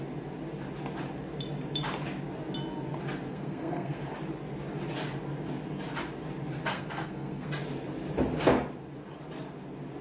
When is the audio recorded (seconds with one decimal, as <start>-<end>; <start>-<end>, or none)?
0.0-3.3; 4.0-6.7; 7.5-10.0

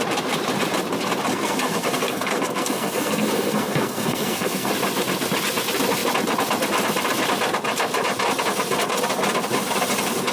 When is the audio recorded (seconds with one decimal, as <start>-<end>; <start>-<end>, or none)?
0.0-1.3; 4.7-10.3